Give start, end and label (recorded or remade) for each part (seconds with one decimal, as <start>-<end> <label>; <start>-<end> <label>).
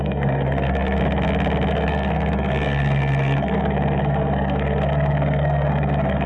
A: 0.0-1.0 remade; 1.0-1.7 recorded; 1.7-6.3 remade